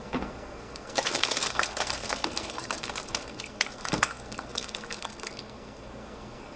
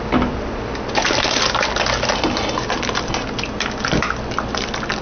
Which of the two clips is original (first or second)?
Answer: second